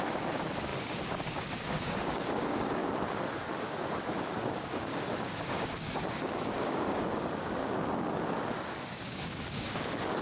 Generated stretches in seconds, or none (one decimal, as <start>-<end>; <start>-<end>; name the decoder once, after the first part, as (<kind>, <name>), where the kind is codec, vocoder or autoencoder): 0.0-2.8 (codec, DAC); 3.5-7.6; 8.8-10.2